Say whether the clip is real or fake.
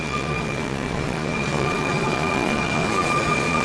fake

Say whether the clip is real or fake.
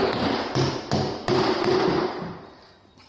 real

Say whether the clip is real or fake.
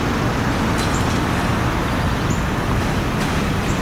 real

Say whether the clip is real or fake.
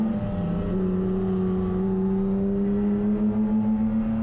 real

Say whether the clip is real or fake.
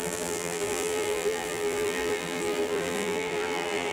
fake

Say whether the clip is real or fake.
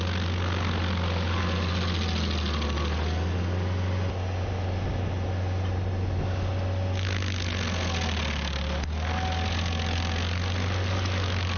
real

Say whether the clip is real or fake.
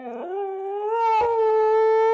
real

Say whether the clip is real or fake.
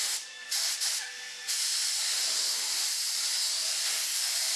real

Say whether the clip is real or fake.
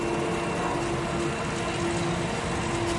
real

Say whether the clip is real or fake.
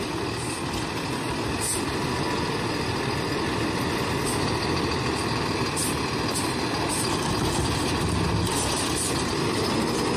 real